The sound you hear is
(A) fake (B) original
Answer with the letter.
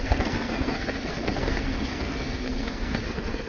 A